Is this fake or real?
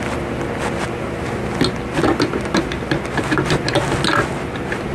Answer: real